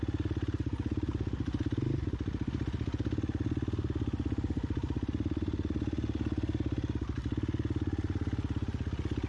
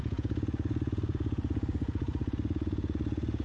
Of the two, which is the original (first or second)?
first